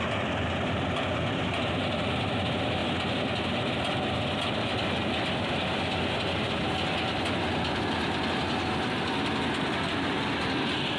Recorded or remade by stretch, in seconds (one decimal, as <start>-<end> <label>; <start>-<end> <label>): 0.0-11.0 recorded